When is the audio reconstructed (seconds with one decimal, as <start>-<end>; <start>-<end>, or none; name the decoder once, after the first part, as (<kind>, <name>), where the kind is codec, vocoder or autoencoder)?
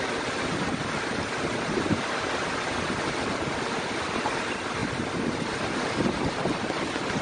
none